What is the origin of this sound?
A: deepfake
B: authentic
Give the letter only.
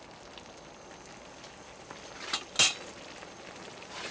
B